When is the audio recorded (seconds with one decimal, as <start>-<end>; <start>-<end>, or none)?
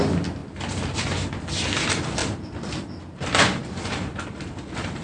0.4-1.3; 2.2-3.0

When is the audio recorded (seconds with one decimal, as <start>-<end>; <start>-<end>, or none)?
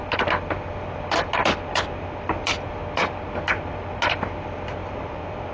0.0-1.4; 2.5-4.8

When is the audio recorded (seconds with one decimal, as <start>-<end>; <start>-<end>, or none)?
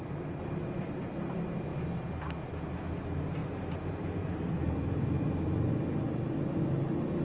0.0-0.4; 1.1-3.4; 5.7-7.2